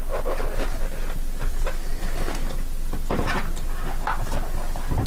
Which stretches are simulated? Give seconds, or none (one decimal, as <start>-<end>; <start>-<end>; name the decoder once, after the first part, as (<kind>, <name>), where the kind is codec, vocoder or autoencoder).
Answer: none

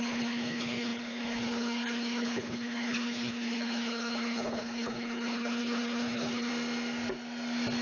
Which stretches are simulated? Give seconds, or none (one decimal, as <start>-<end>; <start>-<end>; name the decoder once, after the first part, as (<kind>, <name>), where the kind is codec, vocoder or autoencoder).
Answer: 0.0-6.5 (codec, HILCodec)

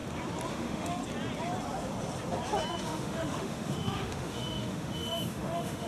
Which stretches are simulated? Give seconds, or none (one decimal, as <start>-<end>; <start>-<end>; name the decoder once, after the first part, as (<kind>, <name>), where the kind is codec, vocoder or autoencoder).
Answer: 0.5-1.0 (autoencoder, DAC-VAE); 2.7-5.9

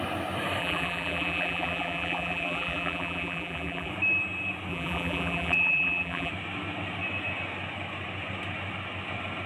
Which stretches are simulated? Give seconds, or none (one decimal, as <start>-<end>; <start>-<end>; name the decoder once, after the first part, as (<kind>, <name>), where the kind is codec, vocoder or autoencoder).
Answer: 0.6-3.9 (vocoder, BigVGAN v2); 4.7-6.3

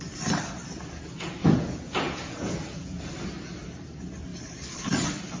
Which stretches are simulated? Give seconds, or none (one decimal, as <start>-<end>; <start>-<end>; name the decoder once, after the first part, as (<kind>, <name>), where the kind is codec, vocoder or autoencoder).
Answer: 1.4-3.0 (vocoder, Vocos)

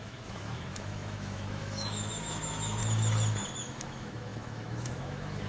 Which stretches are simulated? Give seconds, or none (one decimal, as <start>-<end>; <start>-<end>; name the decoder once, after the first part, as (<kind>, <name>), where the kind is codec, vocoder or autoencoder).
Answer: 0.0-2.8 (autoencoder, DAC-VAE); 3.6-5.5